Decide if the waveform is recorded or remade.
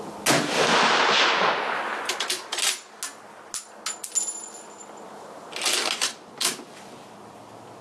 recorded